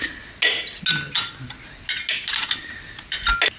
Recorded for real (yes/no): yes